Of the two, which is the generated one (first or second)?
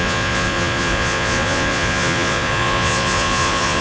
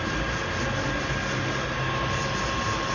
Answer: first